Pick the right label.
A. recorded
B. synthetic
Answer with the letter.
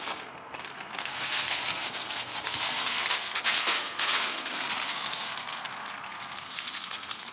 B